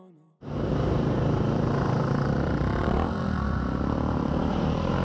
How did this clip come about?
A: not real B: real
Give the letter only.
A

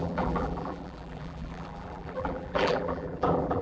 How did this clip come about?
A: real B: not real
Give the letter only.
B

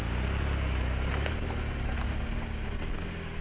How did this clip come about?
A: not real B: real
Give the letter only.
B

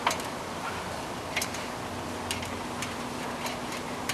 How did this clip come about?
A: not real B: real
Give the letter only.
B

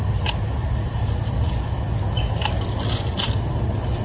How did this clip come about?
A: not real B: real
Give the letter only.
B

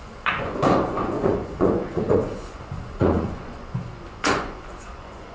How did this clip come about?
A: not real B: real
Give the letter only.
A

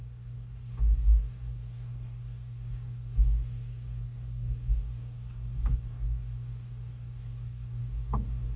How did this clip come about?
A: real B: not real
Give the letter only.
B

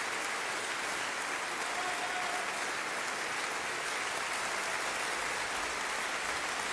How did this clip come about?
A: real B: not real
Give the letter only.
A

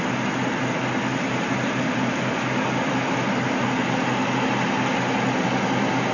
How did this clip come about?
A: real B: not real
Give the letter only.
A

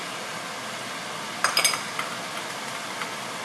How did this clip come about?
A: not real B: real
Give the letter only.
B